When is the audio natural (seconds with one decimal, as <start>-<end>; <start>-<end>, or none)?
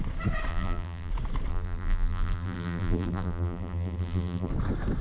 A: 0.0-0.5; 1.1-1.5; 4.5-5.0